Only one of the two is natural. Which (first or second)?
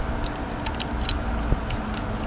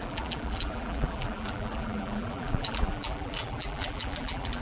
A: first